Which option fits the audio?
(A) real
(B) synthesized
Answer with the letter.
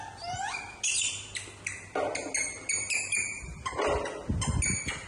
A